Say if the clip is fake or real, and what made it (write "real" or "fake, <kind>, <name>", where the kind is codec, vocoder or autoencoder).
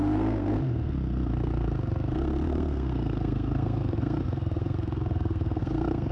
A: fake, codec, SNAC